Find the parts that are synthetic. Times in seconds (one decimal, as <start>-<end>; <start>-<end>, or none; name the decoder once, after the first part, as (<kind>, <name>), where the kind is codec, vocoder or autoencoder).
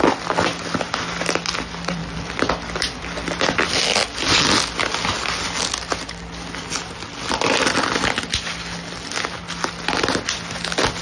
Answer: 2.0-3.4 (vocoder, BigVGAN v2)